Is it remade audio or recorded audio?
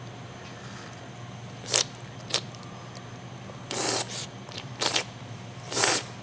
recorded